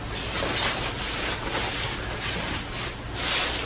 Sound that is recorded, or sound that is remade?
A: recorded